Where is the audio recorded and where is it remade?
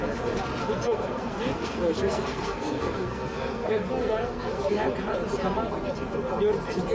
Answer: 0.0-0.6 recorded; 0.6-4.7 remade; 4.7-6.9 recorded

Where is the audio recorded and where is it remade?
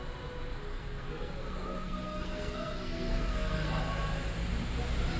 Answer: 0.0-0.7 recorded; 0.7-3.8 remade; 3.8-5.2 recorded